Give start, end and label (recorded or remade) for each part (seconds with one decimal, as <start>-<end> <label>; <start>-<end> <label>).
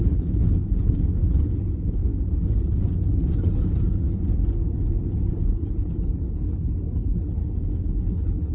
0.0-2.1 remade; 2.1-5.3 recorded; 5.3-7.4 remade; 7.4-8.1 recorded; 8.1-8.5 remade